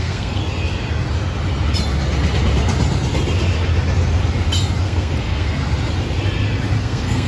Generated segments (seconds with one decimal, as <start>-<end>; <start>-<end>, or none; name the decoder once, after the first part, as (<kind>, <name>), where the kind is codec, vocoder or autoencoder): 0.0-0.4 (codec, SNAC); 4.8-5.6; 6.8-7.3